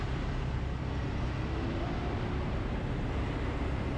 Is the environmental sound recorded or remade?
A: recorded